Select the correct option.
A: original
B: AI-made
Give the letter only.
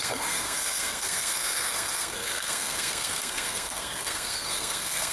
B